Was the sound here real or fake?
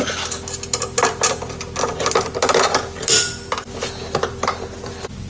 real